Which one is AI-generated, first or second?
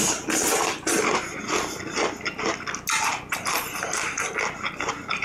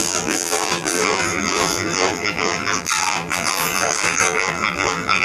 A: second